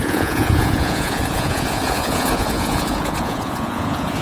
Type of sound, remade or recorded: remade